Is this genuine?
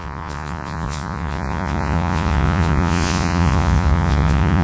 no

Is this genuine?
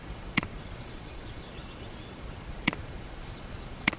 no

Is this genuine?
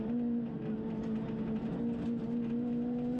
yes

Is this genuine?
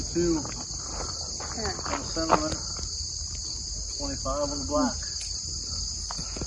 yes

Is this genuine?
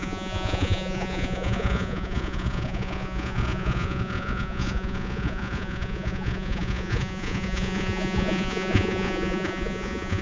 no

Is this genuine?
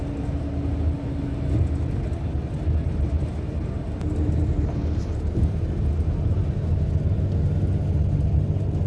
yes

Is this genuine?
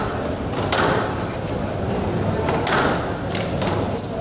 yes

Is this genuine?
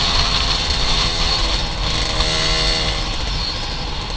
yes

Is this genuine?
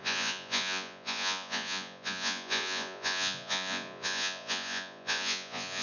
no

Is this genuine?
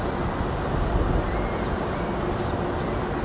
yes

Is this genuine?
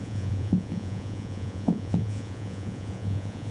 no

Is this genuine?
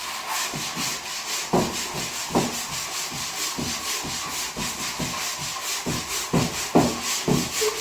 yes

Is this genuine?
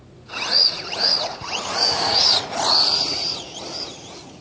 no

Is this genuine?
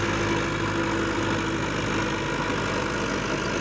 yes